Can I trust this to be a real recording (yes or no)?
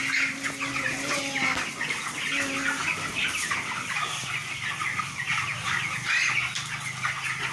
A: yes